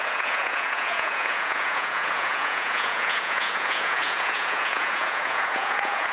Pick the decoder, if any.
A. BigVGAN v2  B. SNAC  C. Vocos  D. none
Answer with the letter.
C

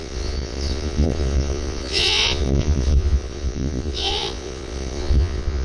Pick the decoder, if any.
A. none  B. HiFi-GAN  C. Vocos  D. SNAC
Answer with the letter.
C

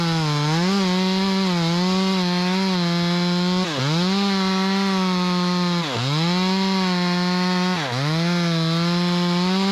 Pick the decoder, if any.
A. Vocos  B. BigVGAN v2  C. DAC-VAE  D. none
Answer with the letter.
D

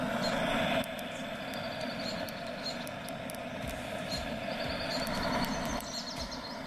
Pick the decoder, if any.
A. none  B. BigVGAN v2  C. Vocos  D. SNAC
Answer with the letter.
A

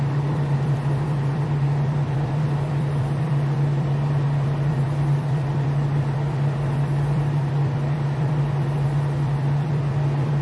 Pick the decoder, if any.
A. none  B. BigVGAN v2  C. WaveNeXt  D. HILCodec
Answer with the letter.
B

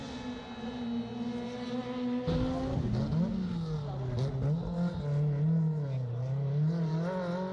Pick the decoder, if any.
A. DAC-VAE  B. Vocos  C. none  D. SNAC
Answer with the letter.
C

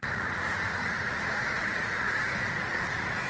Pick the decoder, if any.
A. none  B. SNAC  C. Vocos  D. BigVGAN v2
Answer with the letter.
C